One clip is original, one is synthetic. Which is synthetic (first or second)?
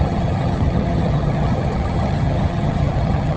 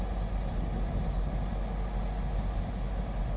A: first